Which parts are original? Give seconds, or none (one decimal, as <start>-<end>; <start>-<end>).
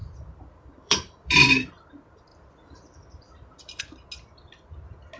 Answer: 1.7-2.3; 3.8-5.2